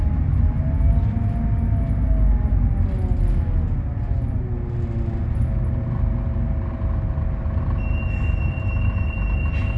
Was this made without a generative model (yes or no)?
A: yes